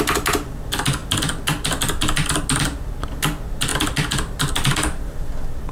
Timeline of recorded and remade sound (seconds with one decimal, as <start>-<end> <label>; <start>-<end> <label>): 0.0-5.7 recorded